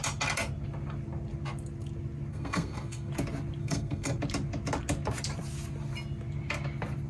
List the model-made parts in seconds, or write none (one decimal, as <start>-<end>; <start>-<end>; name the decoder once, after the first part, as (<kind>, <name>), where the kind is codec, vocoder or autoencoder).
2.3-3.1 (codec, SNAC); 3.6-4.2